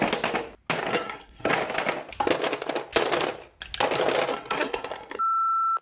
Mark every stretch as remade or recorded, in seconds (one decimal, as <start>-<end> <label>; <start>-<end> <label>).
0.0-0.9 recorded; 0.9-1.5 remade; 1.5-4.3 recorded; 4.3-5.2 remade; 5.2-5.8 recorded